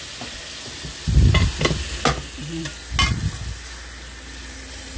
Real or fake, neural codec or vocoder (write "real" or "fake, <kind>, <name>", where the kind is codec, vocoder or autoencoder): real